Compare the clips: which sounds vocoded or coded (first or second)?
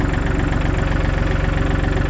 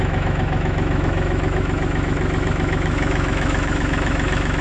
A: second